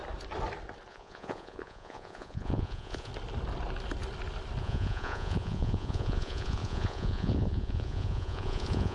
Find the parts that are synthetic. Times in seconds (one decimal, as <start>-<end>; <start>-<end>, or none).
0.9-3.1; 4.6-8.9